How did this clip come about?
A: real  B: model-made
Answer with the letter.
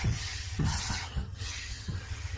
B